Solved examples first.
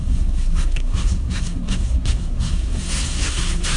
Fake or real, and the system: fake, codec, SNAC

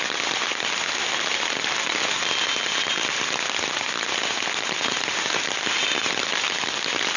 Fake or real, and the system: real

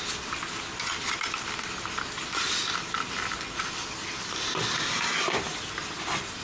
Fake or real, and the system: real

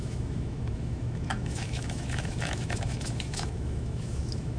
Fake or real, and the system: fake, autoencoder, DAC-VAE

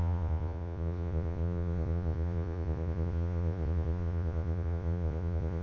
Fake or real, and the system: fake, vocoder, Vocos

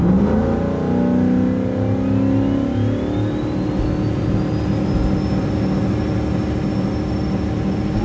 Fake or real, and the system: real